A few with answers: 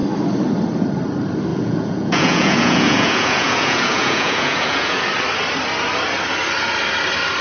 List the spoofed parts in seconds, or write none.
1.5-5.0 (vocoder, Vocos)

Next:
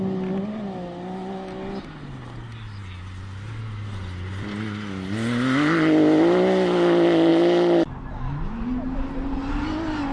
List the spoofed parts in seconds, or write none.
none

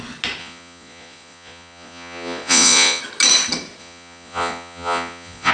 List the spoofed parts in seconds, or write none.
0.4-3.0 (vocoder, Vocos); 3.8-5.5

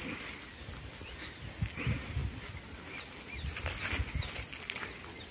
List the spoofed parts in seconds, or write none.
none

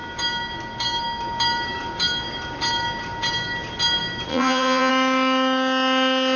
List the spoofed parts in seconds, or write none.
4.3-4.9 (vocoder, Vocos)